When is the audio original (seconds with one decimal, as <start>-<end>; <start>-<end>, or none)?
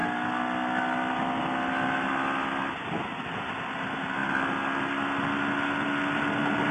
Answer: 0.0-6.7